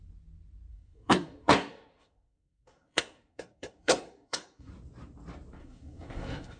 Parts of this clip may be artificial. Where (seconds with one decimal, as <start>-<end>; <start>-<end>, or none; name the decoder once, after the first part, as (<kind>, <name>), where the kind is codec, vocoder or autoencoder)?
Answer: 0.7-4.7 (codec, SNAC); 5.6-6.6